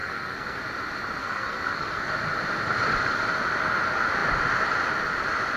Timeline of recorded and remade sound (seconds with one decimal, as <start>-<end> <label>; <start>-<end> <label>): 0.0-0.6 remade; 0.6-1.2 recorded; 1.2-2.1 remade; 2.1-5.6 recorded